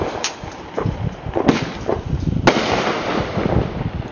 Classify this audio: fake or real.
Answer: real